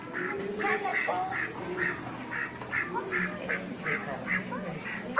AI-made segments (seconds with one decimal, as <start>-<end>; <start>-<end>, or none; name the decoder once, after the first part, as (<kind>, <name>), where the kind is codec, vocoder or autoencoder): none